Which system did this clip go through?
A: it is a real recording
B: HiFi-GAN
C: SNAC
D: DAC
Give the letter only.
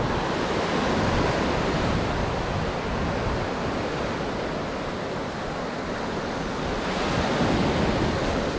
A